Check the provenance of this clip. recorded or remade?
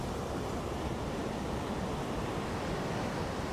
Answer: recorded